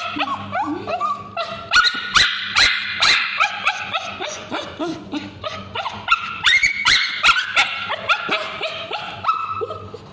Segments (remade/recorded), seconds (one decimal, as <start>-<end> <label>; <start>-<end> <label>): 0.0-2.3 recorded; 2.3-7.1 remade; 7.1-10.1 recorded